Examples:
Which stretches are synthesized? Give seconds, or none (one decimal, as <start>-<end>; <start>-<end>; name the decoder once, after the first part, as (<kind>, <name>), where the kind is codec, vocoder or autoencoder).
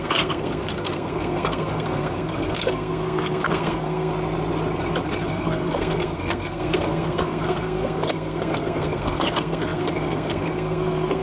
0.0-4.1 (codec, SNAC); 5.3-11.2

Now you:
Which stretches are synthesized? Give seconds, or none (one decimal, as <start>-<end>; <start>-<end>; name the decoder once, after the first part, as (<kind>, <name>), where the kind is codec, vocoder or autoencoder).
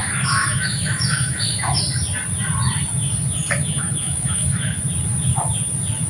0.0-1.8 (autoencoder, DAC-VAE); 3.6-4.8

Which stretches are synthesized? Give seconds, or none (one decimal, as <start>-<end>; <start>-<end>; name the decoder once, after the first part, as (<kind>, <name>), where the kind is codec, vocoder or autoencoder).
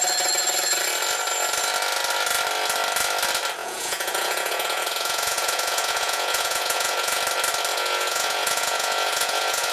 3.6-7.2 (vocoder, Vocos); 7.7-9.7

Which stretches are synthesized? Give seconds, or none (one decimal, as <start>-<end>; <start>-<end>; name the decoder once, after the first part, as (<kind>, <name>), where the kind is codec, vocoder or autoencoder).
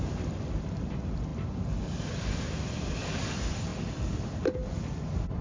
3.7-4.5 (vocoder, BigVGAN v2)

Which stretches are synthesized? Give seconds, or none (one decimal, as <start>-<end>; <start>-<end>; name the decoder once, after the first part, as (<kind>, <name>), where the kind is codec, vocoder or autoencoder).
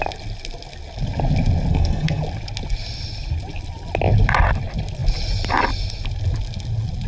1.7-2.2 (codec, SNAC)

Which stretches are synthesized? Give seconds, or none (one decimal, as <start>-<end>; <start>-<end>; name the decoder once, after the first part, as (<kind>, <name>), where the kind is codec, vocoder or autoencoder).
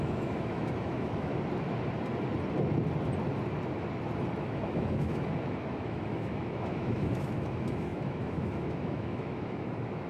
0.0-1.3 (autoencoder, DAC-VAE); 4.4-10.1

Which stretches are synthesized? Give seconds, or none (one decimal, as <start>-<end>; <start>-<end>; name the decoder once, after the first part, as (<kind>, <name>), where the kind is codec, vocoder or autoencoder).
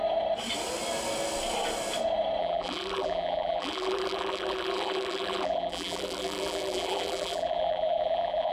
2.4-8.5 (vocoder, BigVGAN v2)